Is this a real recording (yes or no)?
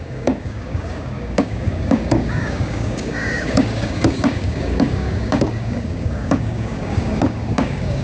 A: no